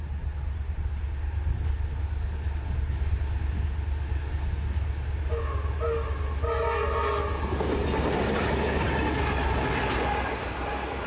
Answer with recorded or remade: recorded